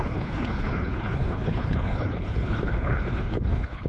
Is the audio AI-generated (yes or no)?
yes